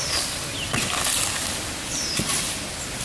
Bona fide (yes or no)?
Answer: yes